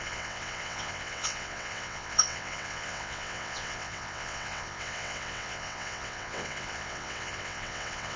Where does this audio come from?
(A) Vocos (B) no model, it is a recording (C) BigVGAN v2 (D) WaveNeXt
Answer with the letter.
D